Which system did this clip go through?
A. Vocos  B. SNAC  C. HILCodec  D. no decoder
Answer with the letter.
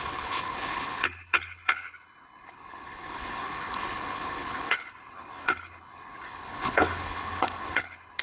C